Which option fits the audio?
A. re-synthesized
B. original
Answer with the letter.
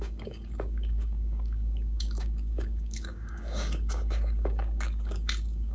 A